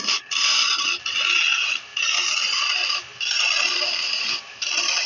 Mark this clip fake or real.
real